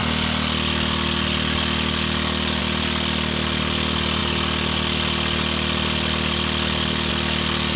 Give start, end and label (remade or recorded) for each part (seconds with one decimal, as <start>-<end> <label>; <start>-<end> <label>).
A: 0.0-7.8 recorded

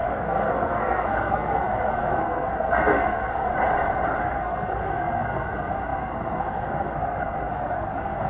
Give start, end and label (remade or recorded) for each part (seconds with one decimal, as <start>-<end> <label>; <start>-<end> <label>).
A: 0.0-3.5 remade; 3.5-4.2 recorded; 4.2-8.3 remade

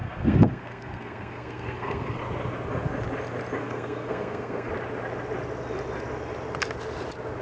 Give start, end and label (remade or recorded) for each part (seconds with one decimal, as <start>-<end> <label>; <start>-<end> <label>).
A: 0.0-2.2 remade; 2.2-3.6 recorded; 3.6-4.7 remade; 4.7-7.4 recorded

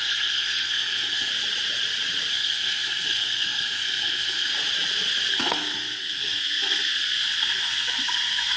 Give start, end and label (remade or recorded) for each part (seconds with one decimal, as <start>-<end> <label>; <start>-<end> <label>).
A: 0.0-1.3 remade; 1.3-2.3 recorded; 2.3-4.5 remade; 4.5-5.3 recorded; 5.3-8.6 remade